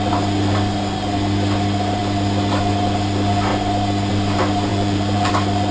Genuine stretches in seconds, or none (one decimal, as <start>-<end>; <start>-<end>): 0.0-4.7; 5.3-5.7